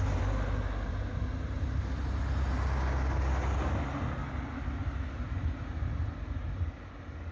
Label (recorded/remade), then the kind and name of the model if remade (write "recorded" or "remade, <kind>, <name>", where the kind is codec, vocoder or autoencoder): recorded